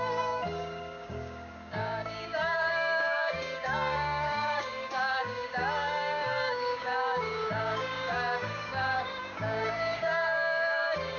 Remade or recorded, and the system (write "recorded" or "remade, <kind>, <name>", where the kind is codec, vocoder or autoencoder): remade, codec, DAC